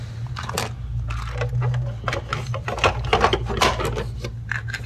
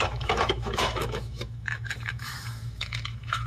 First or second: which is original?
first